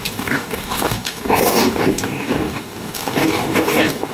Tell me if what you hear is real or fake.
fake